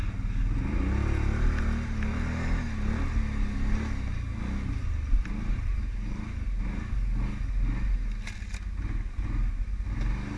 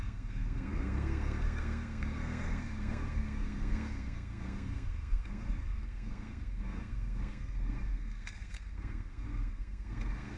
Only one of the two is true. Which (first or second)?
first